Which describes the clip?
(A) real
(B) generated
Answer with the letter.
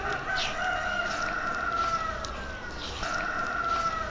A